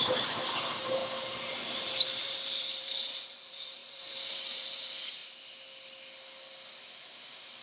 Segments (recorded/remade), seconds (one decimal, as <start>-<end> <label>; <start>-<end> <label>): 0.0-1.0 remade; 1.0-1.6 recorded; 1.6-5.2 remade; 5.2-7.6 recorded